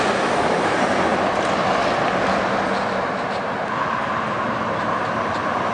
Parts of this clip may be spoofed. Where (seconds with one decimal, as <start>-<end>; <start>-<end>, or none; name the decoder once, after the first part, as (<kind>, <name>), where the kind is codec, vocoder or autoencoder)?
0.0-1.1 (vocoder, BigVGAN v2); 4.5-5.7